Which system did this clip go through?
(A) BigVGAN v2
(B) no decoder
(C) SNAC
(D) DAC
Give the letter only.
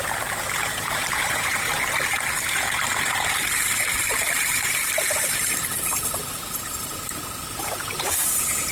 A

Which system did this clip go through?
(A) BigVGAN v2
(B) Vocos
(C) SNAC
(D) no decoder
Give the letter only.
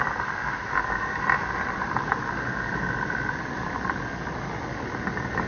D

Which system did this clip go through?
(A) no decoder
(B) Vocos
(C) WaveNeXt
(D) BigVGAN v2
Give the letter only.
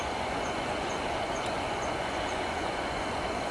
B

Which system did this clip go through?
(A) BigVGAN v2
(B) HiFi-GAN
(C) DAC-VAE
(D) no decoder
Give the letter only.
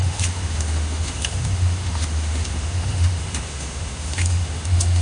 C